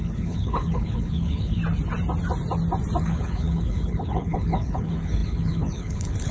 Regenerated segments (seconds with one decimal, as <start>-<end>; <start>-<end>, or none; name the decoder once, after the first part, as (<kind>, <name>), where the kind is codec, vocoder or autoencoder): 0.0-1.6 (codec, HILCodec); 3.0-6.3